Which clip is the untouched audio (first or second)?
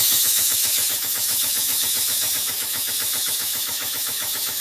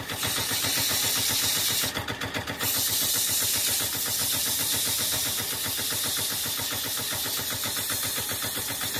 second